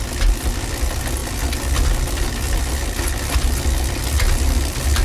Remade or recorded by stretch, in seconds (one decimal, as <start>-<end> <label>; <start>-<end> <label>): 0.0-5.0 recorded